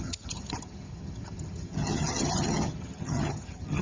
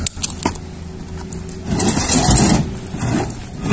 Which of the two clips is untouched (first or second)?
second